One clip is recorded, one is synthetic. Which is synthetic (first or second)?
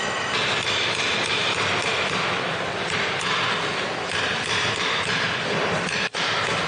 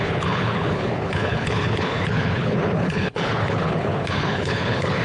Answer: second